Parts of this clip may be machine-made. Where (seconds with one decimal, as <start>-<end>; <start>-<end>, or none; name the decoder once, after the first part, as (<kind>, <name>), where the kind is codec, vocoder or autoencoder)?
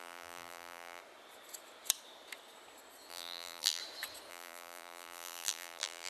0.0-1.0 (vocoder, BigVGAN v2); 3.1-3.8; 4.3-6.1